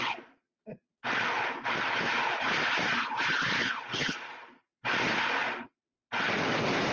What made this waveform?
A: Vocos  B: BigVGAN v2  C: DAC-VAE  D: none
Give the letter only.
D